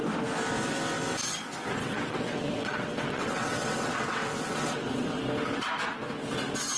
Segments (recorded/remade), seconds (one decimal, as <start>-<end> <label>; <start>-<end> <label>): 0.0-1.8 recorded; 1.8-5.2 remade; 5.2-6.8 recorded